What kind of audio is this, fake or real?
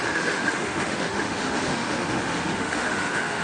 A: fake